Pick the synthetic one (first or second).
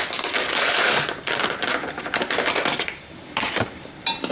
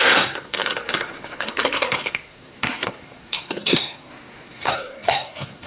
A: second